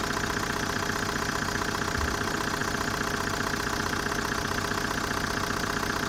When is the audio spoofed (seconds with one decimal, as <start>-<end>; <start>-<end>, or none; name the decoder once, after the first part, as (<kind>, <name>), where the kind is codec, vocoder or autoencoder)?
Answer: none